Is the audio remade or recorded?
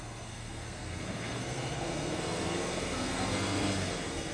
remade